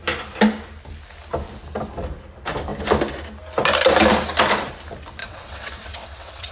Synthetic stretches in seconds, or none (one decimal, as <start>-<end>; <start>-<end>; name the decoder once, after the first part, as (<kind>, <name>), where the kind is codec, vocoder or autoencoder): 5.2-6.5 (vocoder, WaveNeXt)